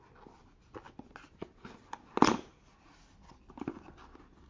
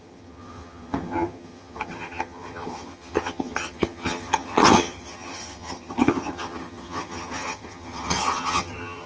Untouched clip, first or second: first